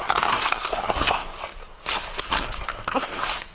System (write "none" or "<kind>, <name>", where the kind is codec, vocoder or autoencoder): codec, SNAC